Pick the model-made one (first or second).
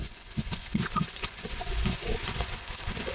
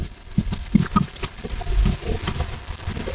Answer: first